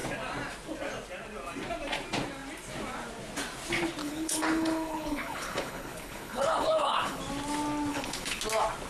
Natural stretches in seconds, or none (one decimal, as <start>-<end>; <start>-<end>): 0.0-4.0; 7.2-7.9; 8.4-8.9

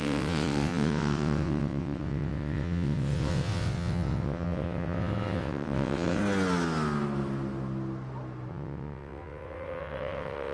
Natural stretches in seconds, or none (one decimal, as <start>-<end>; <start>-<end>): 6.2-8.5

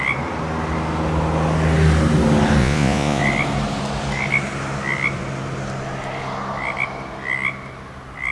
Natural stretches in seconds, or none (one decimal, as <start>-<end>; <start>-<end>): 0.0-2.6; 3.2-8.3

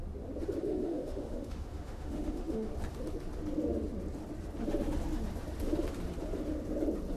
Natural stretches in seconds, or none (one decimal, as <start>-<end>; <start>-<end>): 0.0-0.6; 2.7-7.2